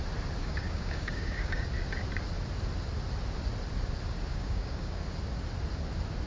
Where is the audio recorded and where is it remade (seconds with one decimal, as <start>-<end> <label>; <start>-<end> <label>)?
0.0-0.4 recorded; 0.4-1.7 remade; 1.7-4.3 recorded; 4.3-5.0 remade; 5.0-6.3 recorded